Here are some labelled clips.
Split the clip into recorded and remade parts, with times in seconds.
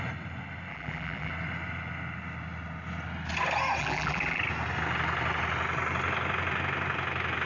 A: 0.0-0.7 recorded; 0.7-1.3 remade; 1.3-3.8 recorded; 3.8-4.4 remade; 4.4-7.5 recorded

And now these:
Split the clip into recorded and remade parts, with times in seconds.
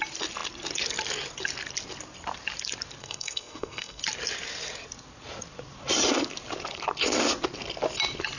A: 0.0-3.0 recorded; 3.0-4.0 remade; 4.0-8.4 recorded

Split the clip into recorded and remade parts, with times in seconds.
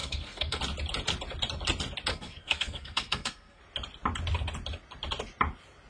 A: 0.0-0.6 remade; 0.6-2.1 recorded; 2.1-3.6 remade; 3.6-5.9 recorded